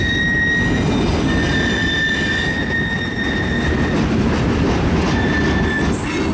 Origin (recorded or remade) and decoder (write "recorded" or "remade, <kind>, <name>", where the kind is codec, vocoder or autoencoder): recorded